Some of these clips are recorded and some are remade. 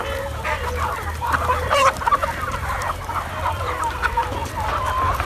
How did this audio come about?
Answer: remade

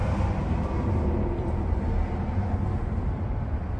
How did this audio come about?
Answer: recorded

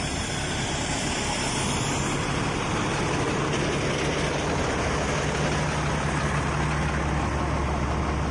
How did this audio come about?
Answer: recorded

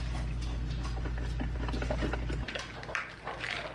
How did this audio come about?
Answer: recorded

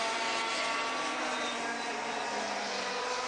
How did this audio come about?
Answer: recorded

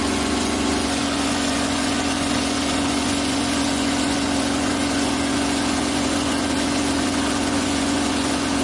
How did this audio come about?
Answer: remade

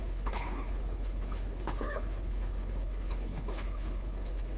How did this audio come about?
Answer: remade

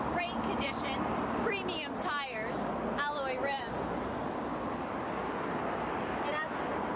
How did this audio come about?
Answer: recorded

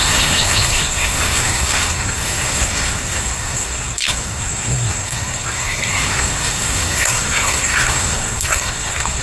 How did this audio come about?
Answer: remade